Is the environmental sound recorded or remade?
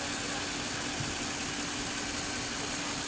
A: recorded